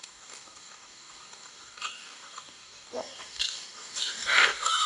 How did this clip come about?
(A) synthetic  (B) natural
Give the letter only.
A